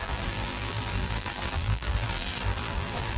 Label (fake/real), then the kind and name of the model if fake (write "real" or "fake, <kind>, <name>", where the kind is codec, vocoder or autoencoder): fake, vocoder, BigVGAN v2